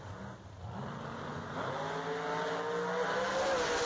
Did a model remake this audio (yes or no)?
no